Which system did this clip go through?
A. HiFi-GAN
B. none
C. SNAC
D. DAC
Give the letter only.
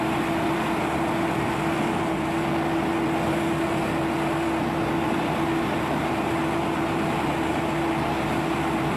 B